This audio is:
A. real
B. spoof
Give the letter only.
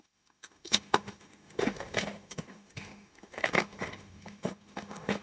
B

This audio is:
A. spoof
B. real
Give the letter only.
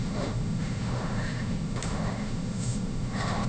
A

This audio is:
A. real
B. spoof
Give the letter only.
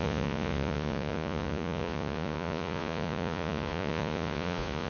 B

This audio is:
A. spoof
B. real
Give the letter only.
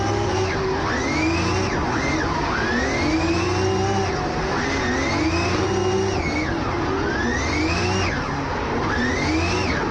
B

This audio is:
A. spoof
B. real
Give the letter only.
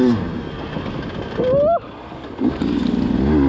B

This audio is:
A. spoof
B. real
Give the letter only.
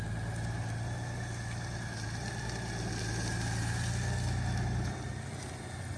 B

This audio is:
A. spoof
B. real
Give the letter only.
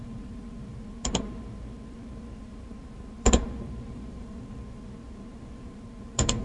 A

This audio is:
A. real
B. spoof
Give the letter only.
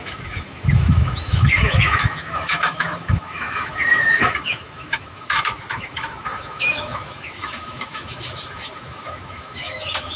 B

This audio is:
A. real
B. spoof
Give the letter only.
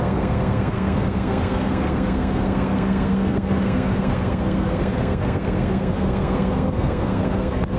B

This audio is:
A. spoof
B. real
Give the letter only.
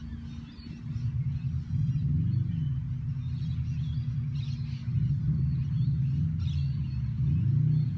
B